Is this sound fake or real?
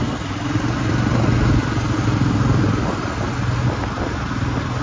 real